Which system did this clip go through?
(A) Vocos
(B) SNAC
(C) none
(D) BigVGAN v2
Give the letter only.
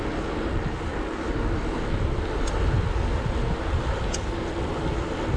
C